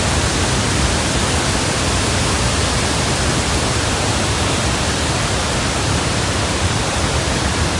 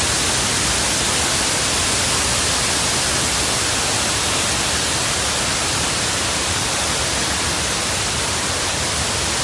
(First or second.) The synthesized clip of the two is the first